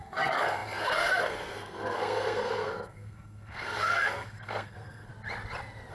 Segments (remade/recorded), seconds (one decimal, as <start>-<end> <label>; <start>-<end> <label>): 0.0-5.1 remade; 5.1-5.9 recorded